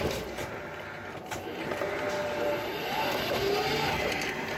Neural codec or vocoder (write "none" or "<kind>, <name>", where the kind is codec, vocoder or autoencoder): none